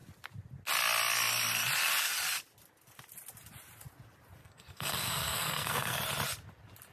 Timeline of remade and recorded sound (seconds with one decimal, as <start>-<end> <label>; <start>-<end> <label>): 0.0-4.4 recorded; 4.4-6.0 remade; 6.0-6.9 recorded

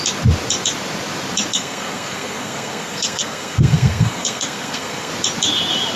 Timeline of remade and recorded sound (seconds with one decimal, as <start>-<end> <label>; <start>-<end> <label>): 0.0-1.5 recorded; 1.5-5.1 remade; 5.1-6.0 recorded

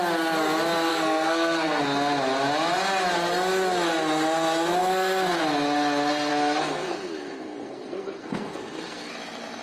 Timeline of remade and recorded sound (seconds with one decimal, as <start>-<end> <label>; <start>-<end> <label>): 0.0-0.9 recorded; 0.9-1.8 remade; 1.8-4.8 recorded; 4.8-5.4 remade; 5.4-6.3 recorded; 6.3-9.1 remade; 9.1-9.6 recorded

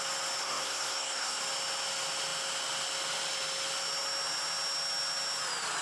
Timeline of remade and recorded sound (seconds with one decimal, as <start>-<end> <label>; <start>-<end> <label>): 0.0-0.4 recorded; 0.4-1.4 remade; 1.4-5.8 recorded

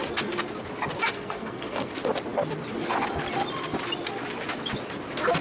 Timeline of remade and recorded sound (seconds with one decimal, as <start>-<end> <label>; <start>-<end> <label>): 0.0-1.1 recorded; 1.1-1.9 remade; 1.9-5.4 recorded

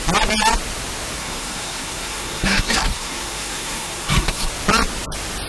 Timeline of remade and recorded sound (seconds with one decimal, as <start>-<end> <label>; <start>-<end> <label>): 0.0-1.2 recorded; 1.2-4.5 remade; 4.5-5.5 recorded